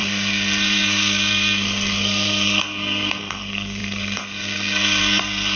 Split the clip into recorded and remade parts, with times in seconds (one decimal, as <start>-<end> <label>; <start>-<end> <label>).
0.0-5.6 remade